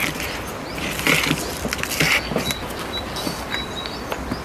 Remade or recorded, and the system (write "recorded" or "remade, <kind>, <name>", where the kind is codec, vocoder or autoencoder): recorded